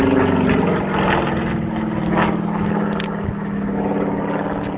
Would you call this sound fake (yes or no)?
no